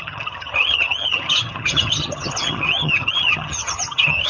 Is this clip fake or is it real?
fake